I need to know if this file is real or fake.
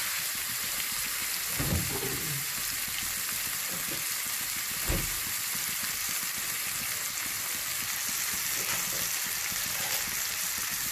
real